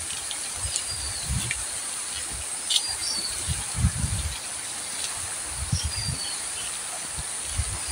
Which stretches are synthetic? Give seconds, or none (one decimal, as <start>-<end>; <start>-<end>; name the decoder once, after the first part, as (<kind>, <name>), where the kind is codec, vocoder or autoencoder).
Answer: none